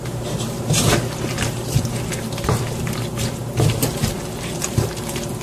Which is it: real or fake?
fake